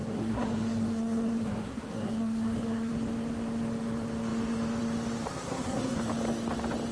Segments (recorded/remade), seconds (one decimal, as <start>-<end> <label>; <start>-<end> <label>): 0.0-2.9 remade; 2.9-5.3 recorded; 5.3-6.0 remade; 6.0-6.9 recorded